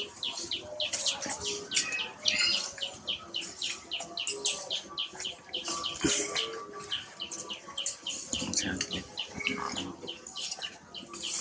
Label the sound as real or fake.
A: real